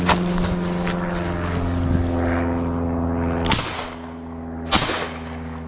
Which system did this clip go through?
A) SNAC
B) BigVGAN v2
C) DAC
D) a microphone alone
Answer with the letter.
D